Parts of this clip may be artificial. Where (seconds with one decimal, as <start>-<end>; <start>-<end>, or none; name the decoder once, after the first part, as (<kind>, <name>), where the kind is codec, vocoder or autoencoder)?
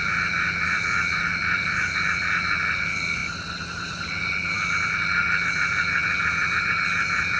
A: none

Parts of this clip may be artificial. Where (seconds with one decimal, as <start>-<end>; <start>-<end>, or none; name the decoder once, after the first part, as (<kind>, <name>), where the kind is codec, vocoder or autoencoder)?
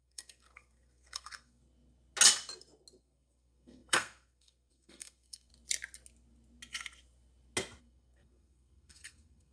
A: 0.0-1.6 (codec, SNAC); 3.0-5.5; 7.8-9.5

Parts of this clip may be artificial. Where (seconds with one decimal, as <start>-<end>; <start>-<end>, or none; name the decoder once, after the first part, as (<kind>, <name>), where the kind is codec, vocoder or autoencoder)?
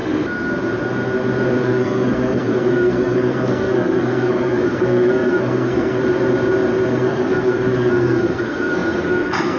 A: 1.6-6.0 (codec, SNAC); 6.9-9.6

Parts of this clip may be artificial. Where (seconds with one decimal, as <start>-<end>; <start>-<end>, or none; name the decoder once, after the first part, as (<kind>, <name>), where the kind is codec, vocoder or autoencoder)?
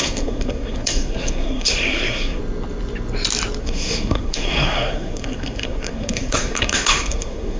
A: 0.0-2.4 (codec, SNAC); 3.6-7.6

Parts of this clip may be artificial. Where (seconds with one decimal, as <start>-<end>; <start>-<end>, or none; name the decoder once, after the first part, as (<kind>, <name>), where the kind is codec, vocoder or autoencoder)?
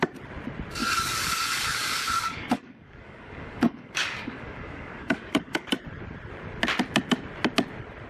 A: 0.8-5.7 (codec, DAC)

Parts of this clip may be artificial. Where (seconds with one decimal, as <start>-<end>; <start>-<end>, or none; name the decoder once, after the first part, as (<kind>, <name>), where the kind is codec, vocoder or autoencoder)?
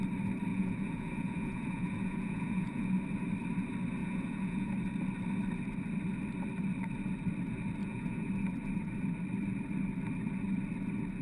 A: 0.5-2.9 (vocoder, Vocos); 4.0-4.7; 7.8-8.3